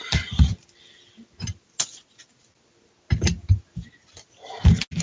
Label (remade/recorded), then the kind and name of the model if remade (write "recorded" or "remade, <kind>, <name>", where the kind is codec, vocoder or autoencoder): recorded